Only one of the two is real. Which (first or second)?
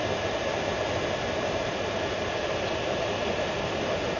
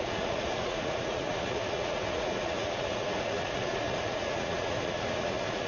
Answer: first